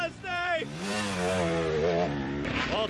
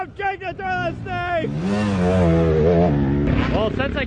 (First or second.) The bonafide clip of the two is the second